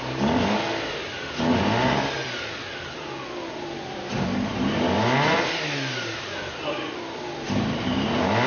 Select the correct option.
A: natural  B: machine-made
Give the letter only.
A